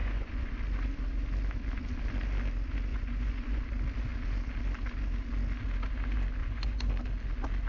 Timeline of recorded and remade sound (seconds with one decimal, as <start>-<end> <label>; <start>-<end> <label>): 0.0-0.5 remade; 0.5-2.9 recorded; 2.9-3.6 remade; 3.6-6.4 recorded; 6.4-6.9 remade; 6.9-7.7 recorded